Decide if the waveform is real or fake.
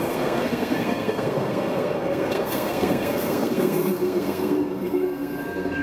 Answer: fake